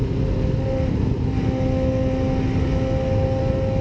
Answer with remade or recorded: recorded